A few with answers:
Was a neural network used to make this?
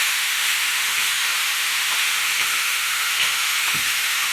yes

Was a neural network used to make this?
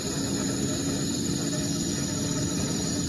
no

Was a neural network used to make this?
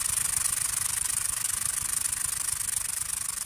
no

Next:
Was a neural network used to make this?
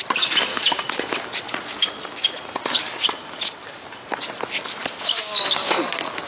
no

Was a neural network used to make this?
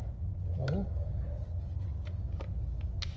no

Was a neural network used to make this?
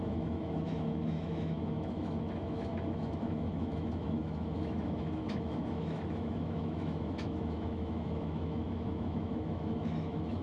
yes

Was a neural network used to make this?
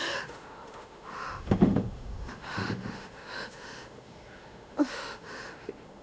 yes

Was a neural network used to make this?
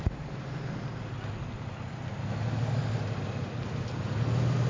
no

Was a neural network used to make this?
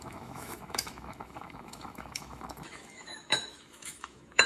yes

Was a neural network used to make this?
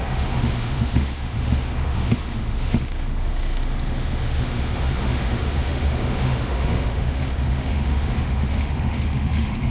yes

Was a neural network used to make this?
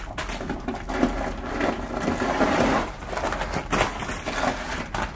no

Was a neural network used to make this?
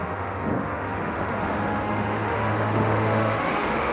yes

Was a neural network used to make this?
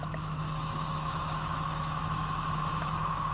yes